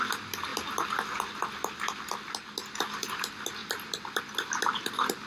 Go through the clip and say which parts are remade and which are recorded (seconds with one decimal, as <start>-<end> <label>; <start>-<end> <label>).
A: 0.0-3.6 recorded; 3.6-4.2 remade; 4.2-5.3 recorded